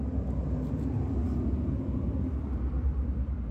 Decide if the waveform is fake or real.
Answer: real